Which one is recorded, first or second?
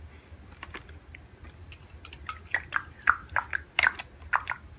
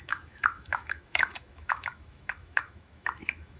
first